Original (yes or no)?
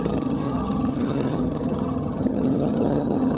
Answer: no